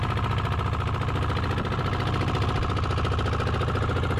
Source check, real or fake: real